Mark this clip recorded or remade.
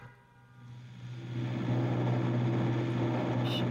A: recorded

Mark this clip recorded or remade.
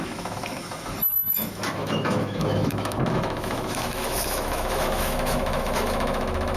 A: remade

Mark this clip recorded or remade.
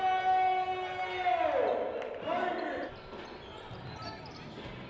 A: recorded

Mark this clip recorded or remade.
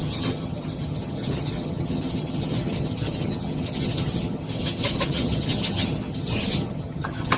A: remade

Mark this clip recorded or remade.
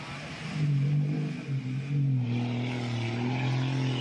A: recorded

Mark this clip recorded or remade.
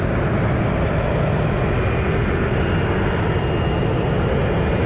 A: recorded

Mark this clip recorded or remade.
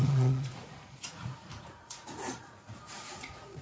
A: remade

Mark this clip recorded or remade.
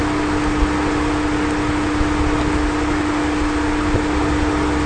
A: recorded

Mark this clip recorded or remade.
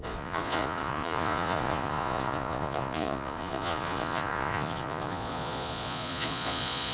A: remade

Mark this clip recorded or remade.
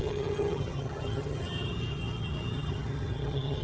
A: remade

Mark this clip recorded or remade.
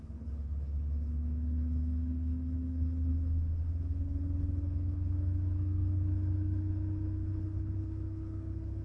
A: remade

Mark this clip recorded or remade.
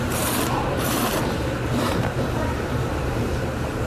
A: remade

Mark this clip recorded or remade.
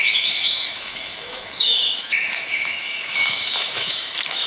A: remade